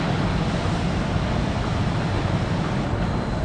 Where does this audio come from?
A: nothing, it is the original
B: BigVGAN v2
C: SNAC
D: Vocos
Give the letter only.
B